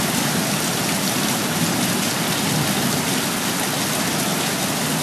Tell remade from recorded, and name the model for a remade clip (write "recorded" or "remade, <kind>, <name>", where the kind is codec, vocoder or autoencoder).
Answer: recorded